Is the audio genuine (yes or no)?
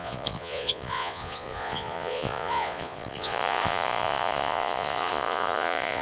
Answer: no